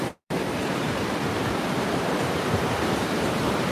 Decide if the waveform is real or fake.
fake